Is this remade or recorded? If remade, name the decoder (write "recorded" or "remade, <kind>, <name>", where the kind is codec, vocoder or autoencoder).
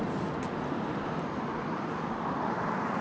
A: recorded